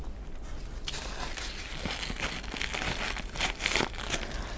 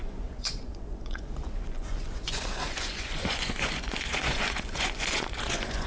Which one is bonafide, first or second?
first